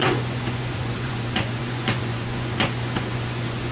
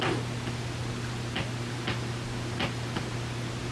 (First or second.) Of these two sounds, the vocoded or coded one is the first